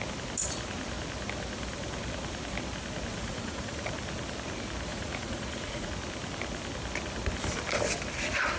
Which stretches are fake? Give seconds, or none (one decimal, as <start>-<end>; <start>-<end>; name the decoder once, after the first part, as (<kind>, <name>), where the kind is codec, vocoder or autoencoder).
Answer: 3.1-3.9 (vocoder, Vocos); 4.9-5.9